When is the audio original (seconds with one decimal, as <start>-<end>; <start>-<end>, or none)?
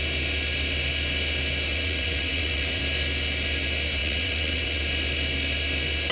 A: 0.0-1.7; 2.8-4.0; 4.8-6.1